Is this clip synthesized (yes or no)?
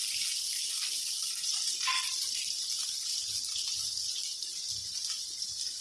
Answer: no